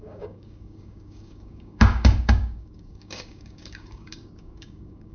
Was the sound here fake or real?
fake